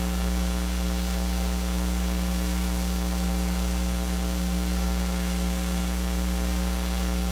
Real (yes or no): no